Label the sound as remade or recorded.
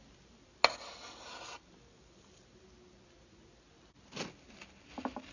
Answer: recorded